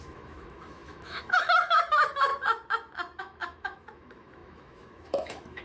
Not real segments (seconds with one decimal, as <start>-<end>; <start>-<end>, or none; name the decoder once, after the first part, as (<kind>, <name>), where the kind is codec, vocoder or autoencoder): 0.0-2.3 (autoencoder, DAC-VAE); 3.2-5.6